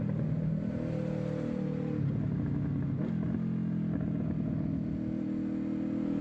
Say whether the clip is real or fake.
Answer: real